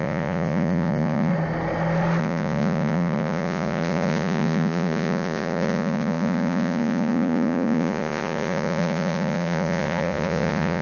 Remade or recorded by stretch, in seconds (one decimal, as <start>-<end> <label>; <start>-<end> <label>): 0.0-1.3 remade; 1.3-2.2 recorded; 2.2-10.8 remade